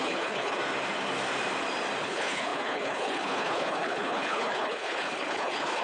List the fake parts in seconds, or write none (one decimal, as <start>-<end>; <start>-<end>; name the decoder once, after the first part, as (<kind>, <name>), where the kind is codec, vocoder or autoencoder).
0.0-0.6 (codec, HILCodec); 2.0-5.8